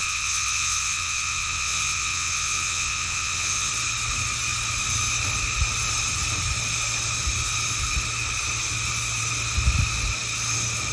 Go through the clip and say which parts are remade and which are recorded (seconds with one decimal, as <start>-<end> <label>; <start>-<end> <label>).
0.0-3.7 remade; 3.7-10.9 recorded